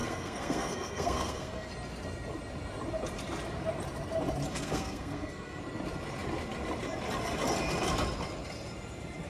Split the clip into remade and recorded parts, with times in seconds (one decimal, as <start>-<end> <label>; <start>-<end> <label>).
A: 0.0-1.7 remade; 1.7-4.5 recorded; 4.5-5.6 remade; 5.6-9.3 recorded